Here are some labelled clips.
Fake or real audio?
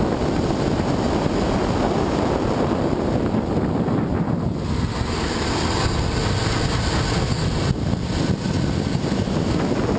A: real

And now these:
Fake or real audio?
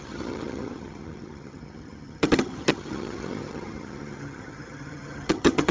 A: fake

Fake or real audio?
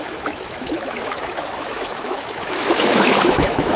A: fake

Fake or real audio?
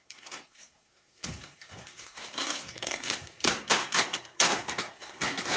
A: fake